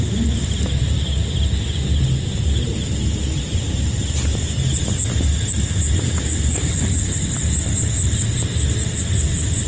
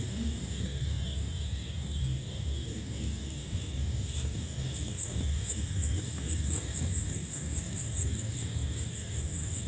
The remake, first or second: second